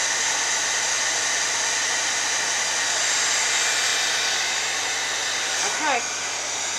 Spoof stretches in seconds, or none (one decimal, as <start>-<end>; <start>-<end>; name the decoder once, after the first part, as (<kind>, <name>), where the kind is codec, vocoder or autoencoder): 0.0-3.9 (vocoder, BigVGAN v2); 5.2-6.8